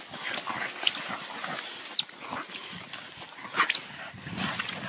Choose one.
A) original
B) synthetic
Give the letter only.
A